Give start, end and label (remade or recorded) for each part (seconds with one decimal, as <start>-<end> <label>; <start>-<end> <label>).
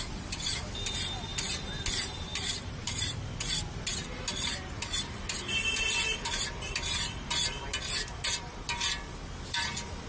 0.0-1.3 remade; 1.3-1.9 recorded; 1.9-10.1 remade